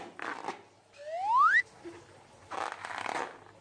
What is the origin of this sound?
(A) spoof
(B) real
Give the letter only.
B